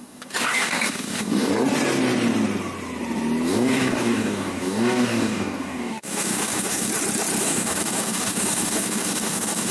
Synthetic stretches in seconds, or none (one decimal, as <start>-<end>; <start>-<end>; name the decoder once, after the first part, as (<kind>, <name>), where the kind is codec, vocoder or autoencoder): 0.0-1.5 (codec, DAC); 3.5-6.9; 7.4-9.7